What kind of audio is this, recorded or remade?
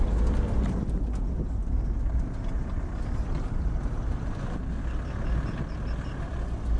recorded